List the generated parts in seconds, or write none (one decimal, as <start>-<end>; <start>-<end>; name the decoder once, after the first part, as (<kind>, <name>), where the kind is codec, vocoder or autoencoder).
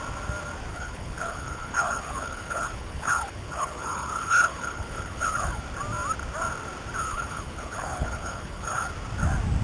0.7-5.6 (codec, HILCodec); 7.0-8.9